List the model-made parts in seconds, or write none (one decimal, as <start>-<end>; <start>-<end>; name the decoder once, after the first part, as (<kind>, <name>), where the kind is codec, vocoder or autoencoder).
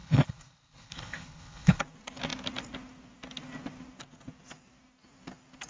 0.0-1.8 (codec, HILCodec)